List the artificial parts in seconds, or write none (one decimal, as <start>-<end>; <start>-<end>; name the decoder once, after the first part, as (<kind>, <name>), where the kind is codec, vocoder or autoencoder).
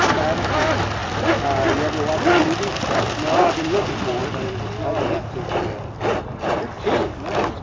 none